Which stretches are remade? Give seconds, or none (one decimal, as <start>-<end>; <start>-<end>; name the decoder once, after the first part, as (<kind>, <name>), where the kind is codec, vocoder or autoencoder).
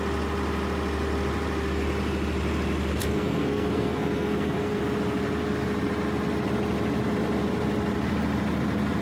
3.0-4.8 (codec, SNAC)